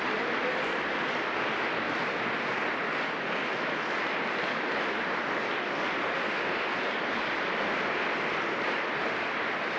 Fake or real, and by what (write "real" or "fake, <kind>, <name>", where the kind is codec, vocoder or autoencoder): real